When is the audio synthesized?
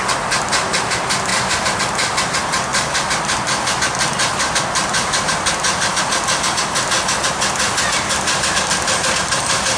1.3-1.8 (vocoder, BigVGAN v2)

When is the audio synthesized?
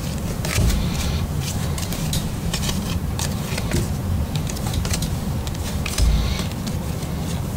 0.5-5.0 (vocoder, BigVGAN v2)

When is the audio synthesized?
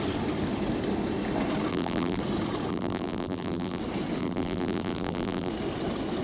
1.7-2.2 (vocoder, BigVGAN v2); 2.7-3.8; 4.2-5.5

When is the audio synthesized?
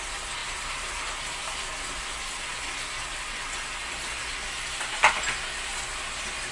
0.4-1.2 (vocoder, BigVGAN v2)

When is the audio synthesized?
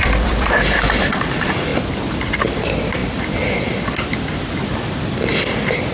0.0-1.7 (vocoder, BigVGAN v2); 2.6-5.9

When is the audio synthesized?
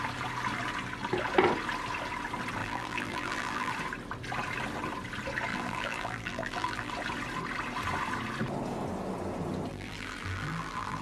2.6-3.7 (vocoder, BigVGAN v2); 5.5-6.9; 9.7-11.0